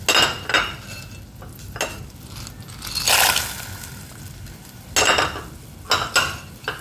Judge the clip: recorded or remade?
recorded